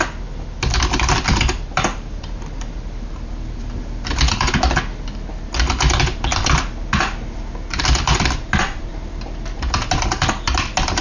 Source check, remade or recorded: recorded